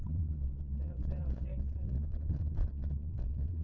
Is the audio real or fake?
fake